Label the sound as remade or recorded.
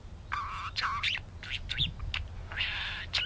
recorded